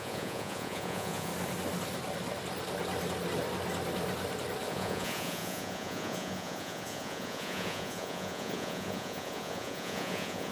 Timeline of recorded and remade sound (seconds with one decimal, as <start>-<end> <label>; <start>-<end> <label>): 0.0-1.3 remade; 1.3-4.7 recorded; 4.7-10.5 remade